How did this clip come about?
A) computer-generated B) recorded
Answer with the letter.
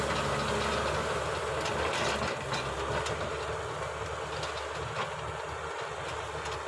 B